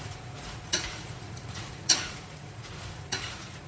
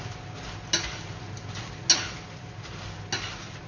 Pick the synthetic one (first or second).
first